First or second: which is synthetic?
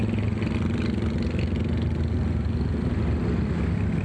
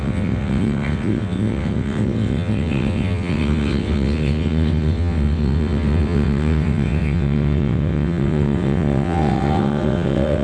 second